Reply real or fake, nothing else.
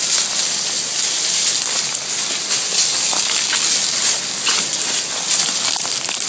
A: real